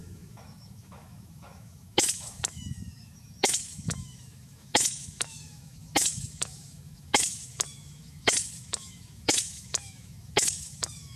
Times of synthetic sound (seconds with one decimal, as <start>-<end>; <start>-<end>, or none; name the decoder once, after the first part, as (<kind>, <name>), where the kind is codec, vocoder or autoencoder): 0.0-11.2 (autoencoder, DAC-VAE)